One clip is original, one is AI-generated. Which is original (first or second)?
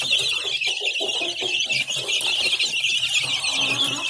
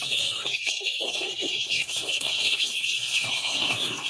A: first